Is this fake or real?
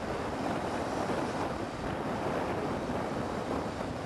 real